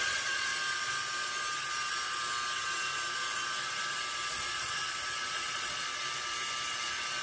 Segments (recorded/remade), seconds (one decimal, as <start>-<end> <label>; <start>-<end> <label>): 0.0-0.5 remade; 0.5-4.3 recorded; 4.3-4.8 remade; 4.8-5.3 recorded; 5.3-5.9 remade; 5.9-7.2 recorded